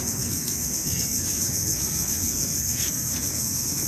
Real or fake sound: fake